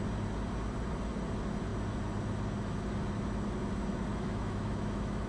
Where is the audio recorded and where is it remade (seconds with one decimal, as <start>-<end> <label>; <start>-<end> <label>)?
0.0-4.1 recorded; 4.1-5.3 remade